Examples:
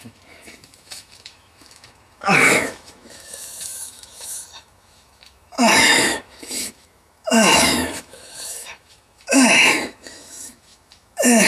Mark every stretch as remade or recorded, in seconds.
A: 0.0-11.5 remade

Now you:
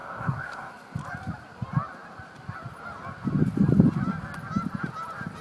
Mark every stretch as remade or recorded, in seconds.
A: 0.0-0.7 remade; 0.7-5.4 recorded

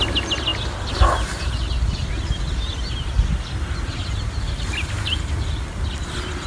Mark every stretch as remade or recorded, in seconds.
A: 0.0-6.5 recorded

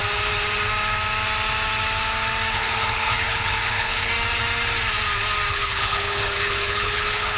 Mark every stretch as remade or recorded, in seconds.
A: 0.0-2.5 recorded; 2.5-4.1 remade; 4.1-5.5 recorded; 5.5-7.4 remade

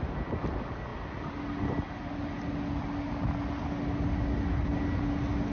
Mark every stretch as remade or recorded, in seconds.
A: 0.0-5.5 recorded

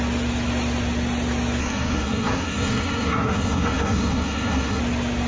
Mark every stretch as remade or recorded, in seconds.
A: 0.0-1.6 recorded; 1.6-4.8 remade; 4.8-5.3 recorded